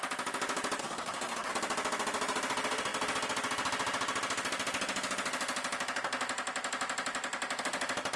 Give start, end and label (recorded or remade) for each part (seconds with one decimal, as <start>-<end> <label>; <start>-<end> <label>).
0.0-0.8 recorded; 0.8-1.5 remade; 1.5-8.2 recorded